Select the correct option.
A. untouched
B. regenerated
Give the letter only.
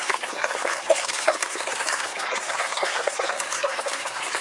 B